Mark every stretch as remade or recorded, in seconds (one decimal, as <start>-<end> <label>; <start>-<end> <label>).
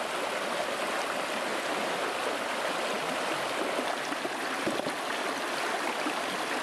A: 0.0-6.6 recorded